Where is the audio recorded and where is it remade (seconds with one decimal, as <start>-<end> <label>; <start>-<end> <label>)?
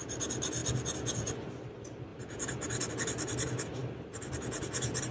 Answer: 0.0-5.1 recorded